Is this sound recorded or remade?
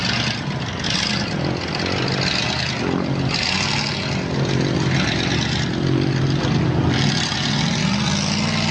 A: recorded